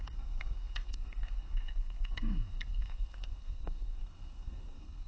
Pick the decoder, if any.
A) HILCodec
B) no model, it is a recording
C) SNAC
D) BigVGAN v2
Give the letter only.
C